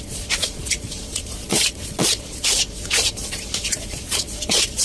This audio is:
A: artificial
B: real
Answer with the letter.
A